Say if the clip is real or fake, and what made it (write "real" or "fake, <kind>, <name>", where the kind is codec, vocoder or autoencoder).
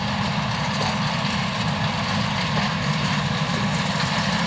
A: real